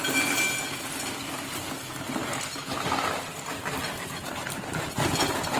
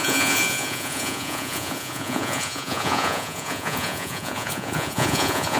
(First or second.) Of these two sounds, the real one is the first